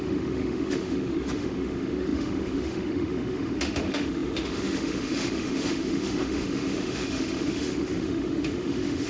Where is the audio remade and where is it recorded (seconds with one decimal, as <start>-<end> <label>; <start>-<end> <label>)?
0.0-9.1 remade

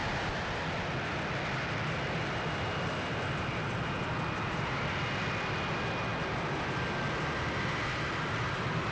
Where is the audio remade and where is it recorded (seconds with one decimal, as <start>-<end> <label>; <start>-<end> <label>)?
0.0-8.9 recorded

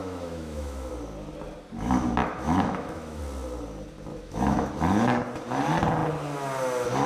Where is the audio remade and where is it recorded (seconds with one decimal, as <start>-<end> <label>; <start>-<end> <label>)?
0.0-0.9 remade; 0.9-2.2 recorded; 2.2-3.2 remade; 3.2-4.1 recorded; 4.1-4.7 remade; 4.7-7.1 recorded

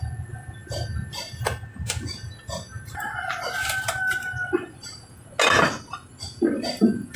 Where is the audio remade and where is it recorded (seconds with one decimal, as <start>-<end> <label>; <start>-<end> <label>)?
0.0-7.2 recorded

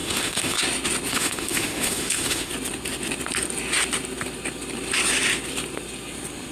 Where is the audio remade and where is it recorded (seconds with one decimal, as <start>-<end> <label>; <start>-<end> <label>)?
0.0-0.6 remade; 0.6-1.1 recorded; 1.1-2.5 remade; 2.5-6.5 recorded